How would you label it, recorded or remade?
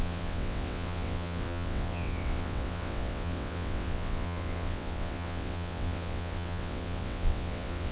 remade